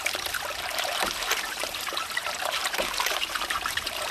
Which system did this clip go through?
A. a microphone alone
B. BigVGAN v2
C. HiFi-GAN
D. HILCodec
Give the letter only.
B